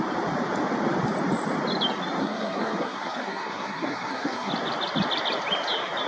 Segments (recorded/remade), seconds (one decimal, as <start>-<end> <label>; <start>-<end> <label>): 0.0-2.2 recorded; 2.2-4.5 remade; 4.5-6.1 recorded